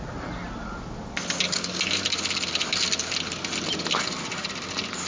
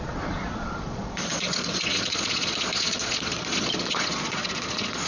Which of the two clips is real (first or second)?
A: first